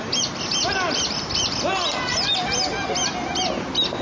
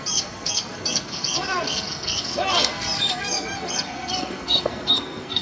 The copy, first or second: second